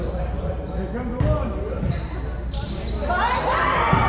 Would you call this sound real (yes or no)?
yes